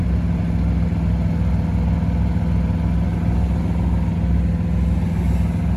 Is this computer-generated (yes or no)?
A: no